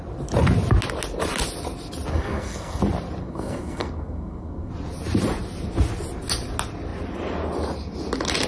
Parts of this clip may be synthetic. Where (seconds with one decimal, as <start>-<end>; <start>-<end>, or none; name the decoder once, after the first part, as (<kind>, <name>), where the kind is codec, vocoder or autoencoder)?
2.1-2.8 (codec, SNAC); 3.2-4.7